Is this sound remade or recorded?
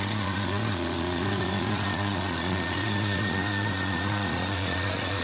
remade